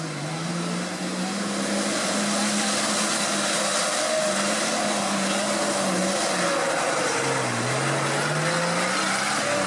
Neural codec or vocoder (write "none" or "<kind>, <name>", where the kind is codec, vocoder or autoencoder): none